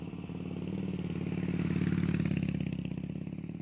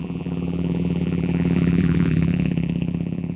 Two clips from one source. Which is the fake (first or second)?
second